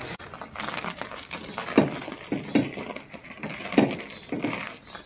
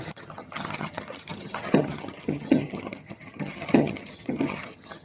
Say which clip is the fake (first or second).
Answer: second